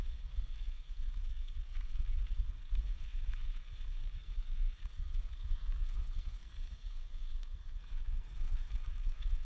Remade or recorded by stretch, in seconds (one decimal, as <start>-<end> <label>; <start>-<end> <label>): 0.0-9.4 remade

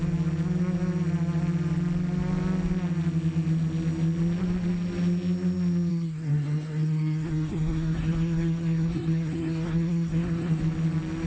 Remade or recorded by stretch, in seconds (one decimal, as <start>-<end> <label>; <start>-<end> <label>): 0.0-5.9 recorded; 5.9-10.6 remade; 10.6-11.3 recorded